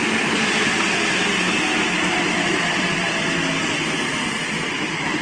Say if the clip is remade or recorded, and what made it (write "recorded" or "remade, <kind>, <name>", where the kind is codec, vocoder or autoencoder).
recorded